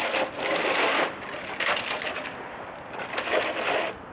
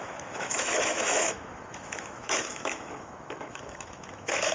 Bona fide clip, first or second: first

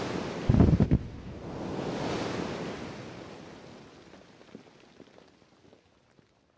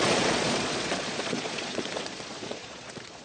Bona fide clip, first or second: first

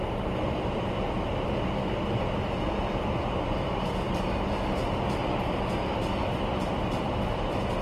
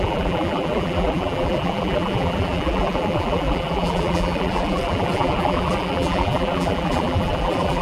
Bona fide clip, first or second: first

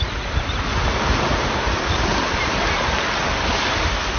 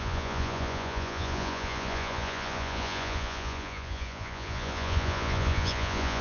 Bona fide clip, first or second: first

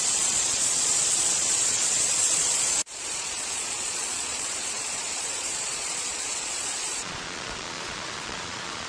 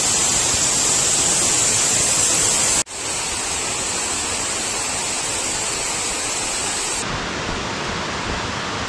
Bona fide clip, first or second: second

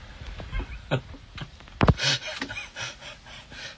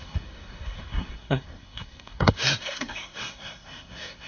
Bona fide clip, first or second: first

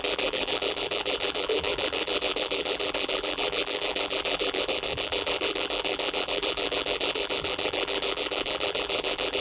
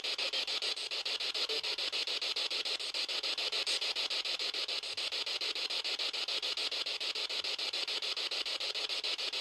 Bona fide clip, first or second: second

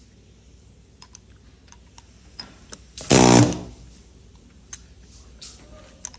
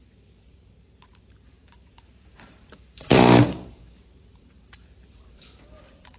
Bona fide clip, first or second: first